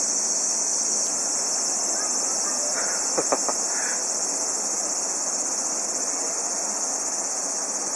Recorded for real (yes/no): yes